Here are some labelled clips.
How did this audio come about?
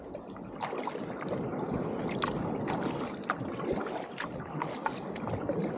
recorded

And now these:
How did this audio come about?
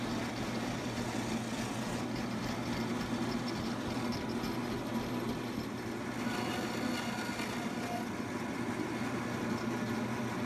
recorded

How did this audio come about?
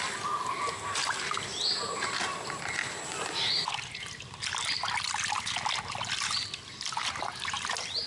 recorded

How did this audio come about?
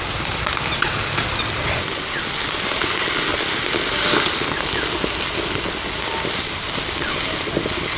recorded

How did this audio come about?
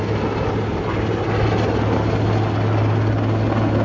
recorded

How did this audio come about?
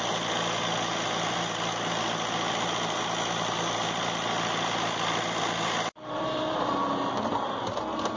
remade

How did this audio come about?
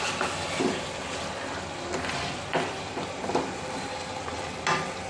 recorded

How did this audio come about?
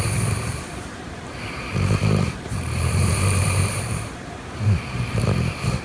remade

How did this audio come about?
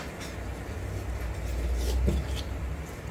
recorded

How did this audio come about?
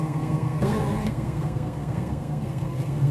remade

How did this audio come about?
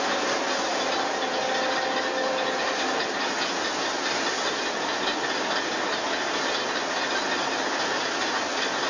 recorded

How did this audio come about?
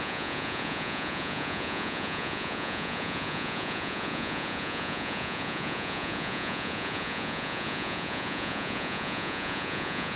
remade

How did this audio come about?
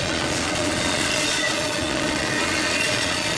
remade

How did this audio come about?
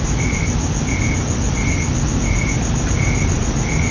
recorded